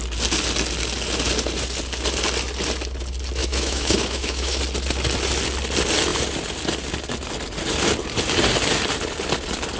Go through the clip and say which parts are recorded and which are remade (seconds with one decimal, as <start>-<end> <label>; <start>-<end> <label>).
0.0-3.4 recorded; 3.4-4.6 remade; 4.6-9.8 recorded